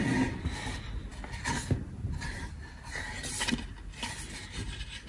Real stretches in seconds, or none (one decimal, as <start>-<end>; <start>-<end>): 0.0-5.1